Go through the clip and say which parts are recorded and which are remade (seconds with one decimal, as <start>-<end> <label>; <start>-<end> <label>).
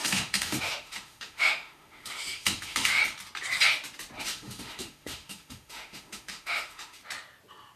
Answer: 0.0-3.0 remade; 3.0-4.2 recorded; 4.2-7.0 remade; 7.0-7.8 recorded